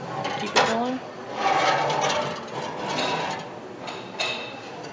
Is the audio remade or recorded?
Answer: recorded